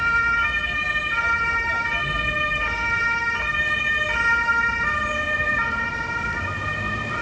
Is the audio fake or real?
real